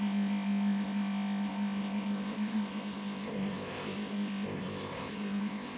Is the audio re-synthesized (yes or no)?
yes